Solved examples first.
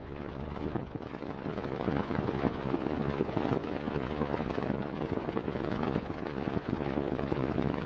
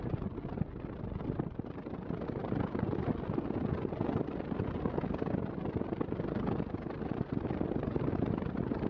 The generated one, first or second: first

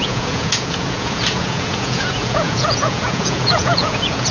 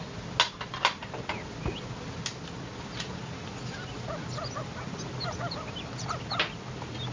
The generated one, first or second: first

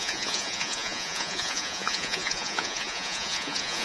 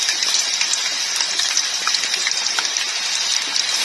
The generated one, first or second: first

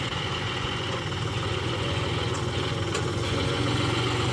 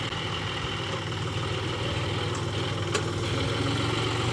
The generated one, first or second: first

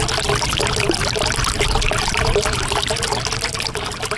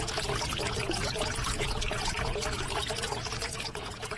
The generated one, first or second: second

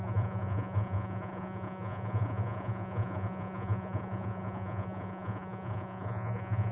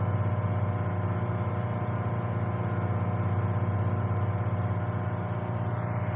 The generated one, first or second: first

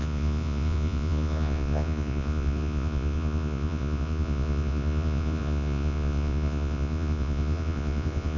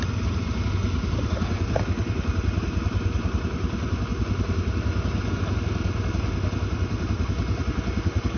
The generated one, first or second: first